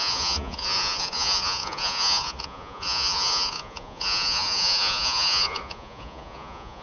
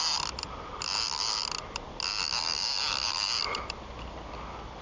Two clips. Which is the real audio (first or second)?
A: second